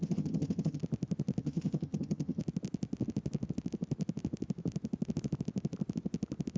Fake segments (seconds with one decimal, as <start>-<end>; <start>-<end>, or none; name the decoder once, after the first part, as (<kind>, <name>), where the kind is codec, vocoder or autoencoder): 0.0-0.8 (vocoder, HiFi-GAN); 1.4-2.4